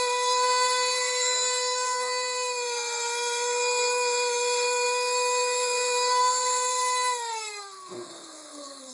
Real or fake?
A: fake